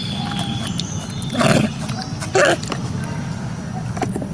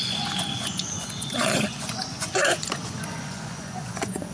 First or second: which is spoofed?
second